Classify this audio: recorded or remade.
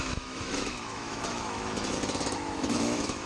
remade